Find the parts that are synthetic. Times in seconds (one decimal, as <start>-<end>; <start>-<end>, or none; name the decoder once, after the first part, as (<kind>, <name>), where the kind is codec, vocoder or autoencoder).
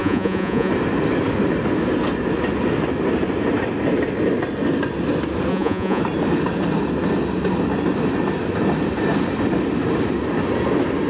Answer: 0.0-0.7 (vocoder, Vocos); 5.5-6.0